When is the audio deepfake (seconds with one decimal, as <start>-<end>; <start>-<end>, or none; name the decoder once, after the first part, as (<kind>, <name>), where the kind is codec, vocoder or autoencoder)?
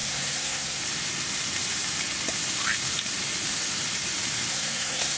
0.0-0.8 (codec, SNAC); 4.5-5.2